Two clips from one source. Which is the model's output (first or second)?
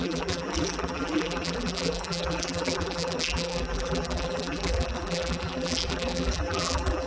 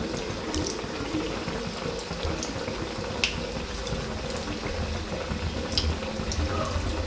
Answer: first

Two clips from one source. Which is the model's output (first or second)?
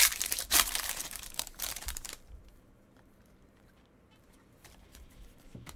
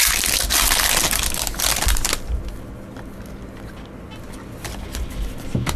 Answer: first